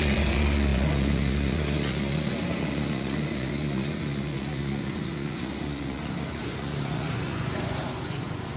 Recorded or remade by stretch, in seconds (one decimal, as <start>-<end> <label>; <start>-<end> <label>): 0.0-8.6 remade